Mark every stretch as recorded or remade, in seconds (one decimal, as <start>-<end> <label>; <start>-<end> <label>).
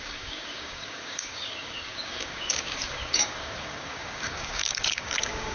0.0-5.5 remade